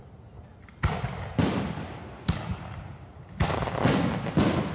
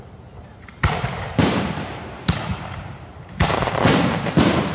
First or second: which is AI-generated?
second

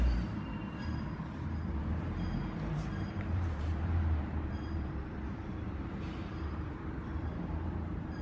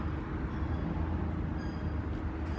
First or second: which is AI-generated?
first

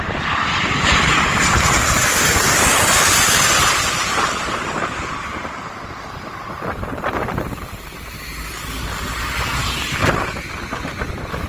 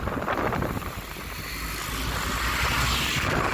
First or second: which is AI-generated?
first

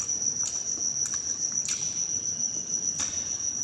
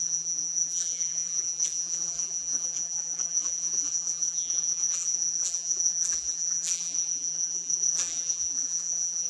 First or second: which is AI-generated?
second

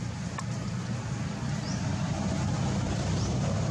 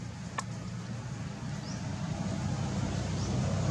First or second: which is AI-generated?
first